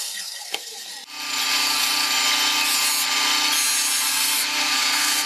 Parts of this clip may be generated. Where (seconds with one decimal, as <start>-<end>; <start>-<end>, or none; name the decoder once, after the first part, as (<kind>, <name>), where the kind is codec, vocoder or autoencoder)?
0.0-0.9 (codec, SNAC); 4.1-5.3